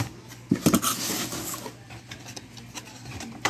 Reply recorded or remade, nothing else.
recorded